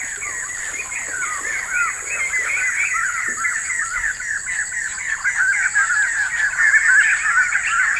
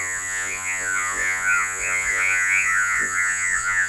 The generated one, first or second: second